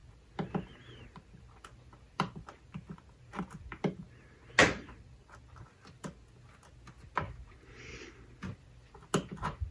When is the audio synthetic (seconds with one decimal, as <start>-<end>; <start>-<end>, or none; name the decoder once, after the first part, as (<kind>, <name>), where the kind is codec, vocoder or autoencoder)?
none